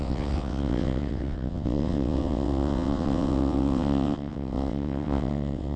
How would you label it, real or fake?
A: fake